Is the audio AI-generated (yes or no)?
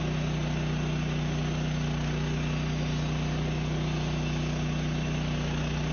no